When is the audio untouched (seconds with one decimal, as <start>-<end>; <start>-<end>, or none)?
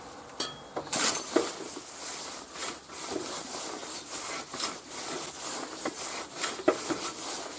0.0-7.6